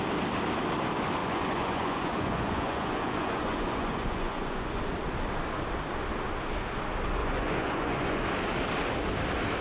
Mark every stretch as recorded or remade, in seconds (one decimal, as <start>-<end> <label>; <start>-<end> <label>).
0.0-1.2 recorded; 1.2-4.8 remade; 4.8-7.2 recorded; 7.2-8.2 remade; 8.2-9.6 recorded